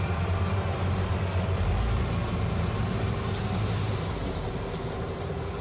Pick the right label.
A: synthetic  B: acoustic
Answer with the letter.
A